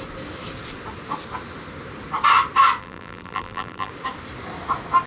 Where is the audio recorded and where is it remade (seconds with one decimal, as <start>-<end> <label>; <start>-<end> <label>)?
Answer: 0.0-2.8 recorded; 2.8-3.9 remade; 3.9-5.1 recorded